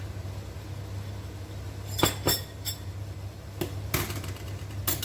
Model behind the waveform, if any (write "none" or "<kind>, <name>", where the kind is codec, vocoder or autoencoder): none